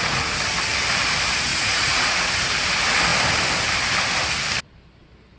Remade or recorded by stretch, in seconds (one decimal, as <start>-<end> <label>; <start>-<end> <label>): 0.0-1.5 recorded; 1.5-2.3 remade; 2.3-5.4 recorded